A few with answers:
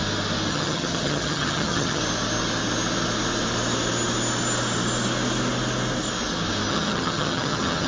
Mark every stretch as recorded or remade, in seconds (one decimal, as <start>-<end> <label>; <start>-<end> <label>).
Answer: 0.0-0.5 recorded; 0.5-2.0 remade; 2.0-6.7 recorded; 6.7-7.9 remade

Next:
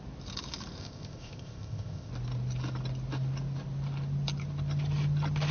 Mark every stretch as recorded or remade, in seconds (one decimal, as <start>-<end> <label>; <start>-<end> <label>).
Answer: 0.0-0.8 recorded; 0.8-2.1 remade; 2.1-5.5 recorded

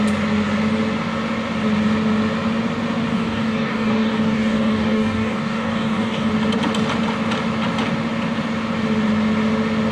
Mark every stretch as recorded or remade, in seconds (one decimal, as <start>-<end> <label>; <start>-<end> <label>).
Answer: 0.0-3.1 recorded; 3.1-6.3 remade; 6.3-9.9 recorded

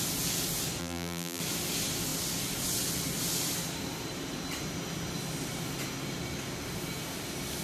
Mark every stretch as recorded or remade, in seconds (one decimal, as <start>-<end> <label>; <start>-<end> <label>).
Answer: 0.0-0.8 recorded; 0.8-1.4 remade; 1.4-7.6 recorded

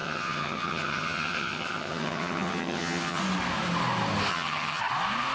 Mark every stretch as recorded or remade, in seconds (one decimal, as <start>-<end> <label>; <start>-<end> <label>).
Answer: 0.0-3.2 remade; 3.2-4.3 recorded; 4.3-4.8 remade; 4.8-5.3 recorded